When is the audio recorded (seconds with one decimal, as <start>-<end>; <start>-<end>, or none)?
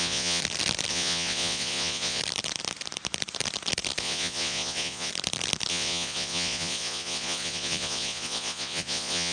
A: 0.4-0.9; 2.2-4.0; 5.1-5.7